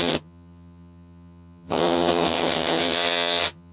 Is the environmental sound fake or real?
fake